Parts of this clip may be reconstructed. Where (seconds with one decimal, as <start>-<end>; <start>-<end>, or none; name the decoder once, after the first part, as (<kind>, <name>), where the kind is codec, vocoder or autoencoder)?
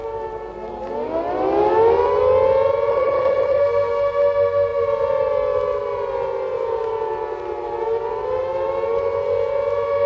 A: 2.9-3.6 (vocoder, HiFi-GAN)